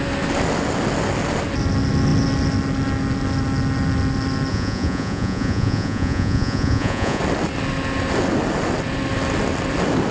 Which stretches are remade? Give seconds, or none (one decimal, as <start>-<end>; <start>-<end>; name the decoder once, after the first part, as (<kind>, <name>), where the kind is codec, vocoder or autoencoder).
4.5-7.2 (vocoder, Vocos)